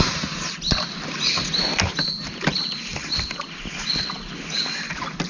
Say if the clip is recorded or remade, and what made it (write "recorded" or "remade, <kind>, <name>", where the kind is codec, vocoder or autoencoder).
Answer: recorded